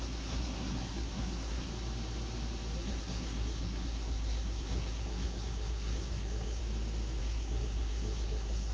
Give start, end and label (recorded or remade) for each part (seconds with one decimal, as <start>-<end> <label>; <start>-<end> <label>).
0.0-1.7 remade; 1.7-2.8 recorded; 2.8-6.6 remade; 6.6-7.2 recorded; 7.2-8.7 remade